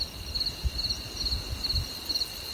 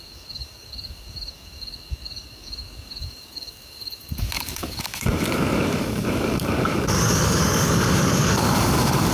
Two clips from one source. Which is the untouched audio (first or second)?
first